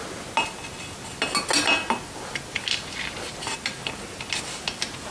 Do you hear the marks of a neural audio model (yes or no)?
no